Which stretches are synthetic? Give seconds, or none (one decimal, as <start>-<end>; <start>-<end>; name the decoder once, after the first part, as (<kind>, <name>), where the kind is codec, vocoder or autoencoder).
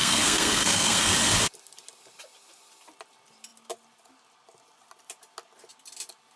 0.0-1.1 (codec, SNAC)